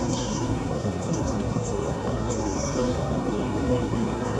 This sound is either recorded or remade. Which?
remade